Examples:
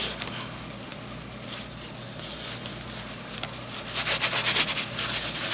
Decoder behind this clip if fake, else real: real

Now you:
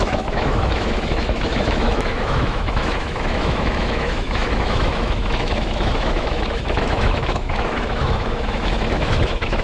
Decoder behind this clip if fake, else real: fake, autoencoder, DAC-VAE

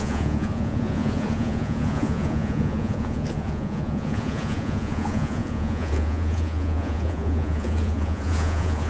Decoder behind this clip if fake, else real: fake, vocoder, Vocos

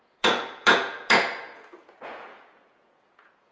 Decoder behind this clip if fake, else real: fake, vocoder, Vocos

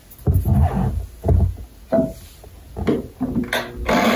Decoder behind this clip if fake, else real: real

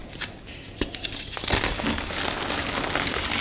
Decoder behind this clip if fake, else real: real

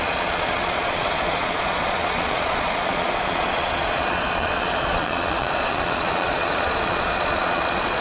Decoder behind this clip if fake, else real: fake, vocoder, Vocos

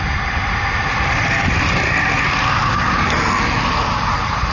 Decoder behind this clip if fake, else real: real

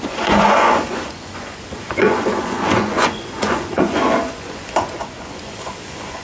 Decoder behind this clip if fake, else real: fake, vocoder, Vocos